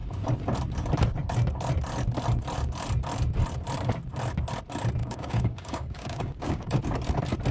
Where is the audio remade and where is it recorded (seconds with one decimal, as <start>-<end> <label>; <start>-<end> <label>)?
0.0-5.0 recorded; 5.0-6.8 remade; 6.8-7.5 recorded